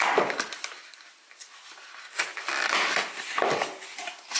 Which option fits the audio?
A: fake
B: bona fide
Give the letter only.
A